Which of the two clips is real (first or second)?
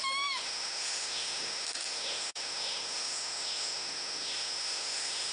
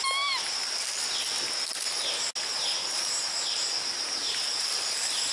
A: second